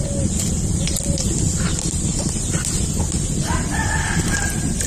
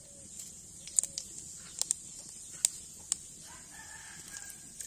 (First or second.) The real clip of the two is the second